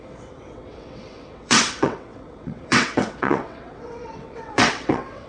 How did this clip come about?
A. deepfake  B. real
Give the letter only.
A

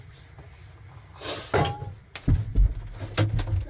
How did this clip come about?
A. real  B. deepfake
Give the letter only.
A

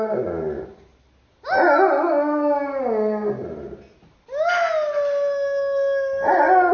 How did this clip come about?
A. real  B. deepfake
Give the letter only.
A